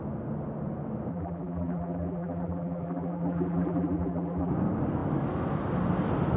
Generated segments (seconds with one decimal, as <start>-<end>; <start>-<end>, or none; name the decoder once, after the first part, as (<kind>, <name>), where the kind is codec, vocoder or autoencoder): 1.1-4.5 (vocoder, BigVGAN v2)